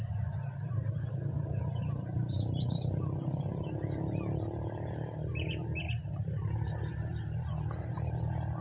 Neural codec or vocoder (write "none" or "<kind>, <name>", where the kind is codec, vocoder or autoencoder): vocoder, BigVGAN v2